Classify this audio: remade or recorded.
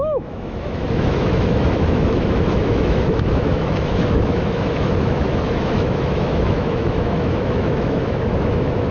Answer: remade